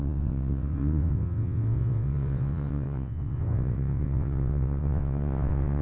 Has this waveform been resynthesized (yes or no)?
yes